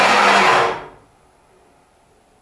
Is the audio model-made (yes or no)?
no